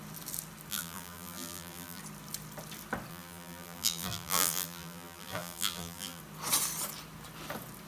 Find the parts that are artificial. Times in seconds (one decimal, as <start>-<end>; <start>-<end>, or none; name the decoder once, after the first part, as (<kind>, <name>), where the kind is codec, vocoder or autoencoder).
0.7-2.0 (vocoder, BigVGAN v2); 3.1-6.2